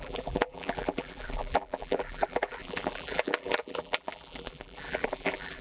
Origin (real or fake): fake